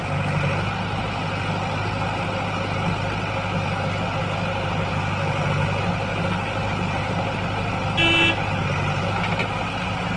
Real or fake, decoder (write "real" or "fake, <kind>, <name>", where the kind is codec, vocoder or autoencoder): real